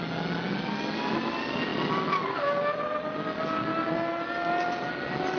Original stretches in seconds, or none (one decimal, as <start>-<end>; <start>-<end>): 0.0-5.4